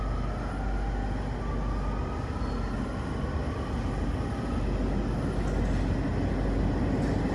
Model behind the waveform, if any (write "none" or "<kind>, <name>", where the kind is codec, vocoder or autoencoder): none